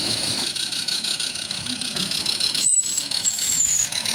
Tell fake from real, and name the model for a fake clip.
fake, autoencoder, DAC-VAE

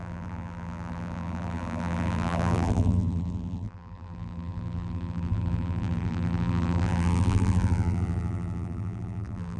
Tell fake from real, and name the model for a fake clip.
fake, vocoder, BigVGAN v2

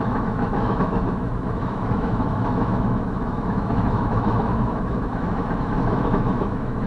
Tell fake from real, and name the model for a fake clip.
fake, autoencoder, DAC-VAE